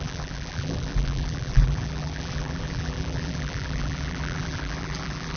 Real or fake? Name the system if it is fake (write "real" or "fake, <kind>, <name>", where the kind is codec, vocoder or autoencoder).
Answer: fake, vocoder, BigVGAN v2